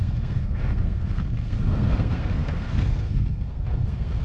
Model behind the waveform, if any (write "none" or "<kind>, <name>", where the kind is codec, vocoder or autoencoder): codec, SNAC